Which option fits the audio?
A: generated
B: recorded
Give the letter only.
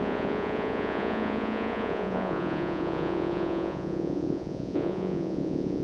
A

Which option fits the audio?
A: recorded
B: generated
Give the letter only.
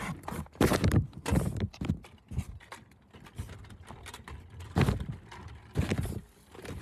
A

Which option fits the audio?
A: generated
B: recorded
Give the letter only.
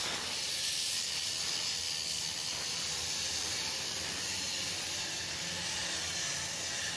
B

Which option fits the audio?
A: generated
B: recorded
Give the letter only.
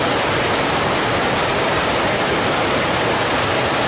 B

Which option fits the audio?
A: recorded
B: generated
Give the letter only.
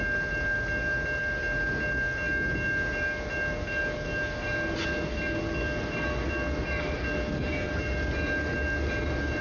A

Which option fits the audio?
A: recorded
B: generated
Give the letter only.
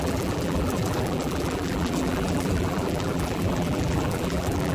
B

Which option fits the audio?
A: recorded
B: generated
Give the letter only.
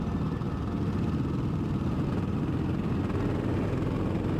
A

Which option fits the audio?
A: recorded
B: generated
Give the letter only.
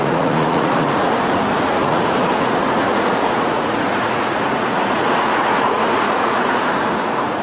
B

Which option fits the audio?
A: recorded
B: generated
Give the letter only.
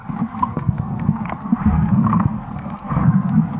B